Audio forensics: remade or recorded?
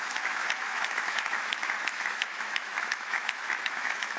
remade